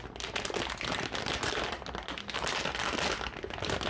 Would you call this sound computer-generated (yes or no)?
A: no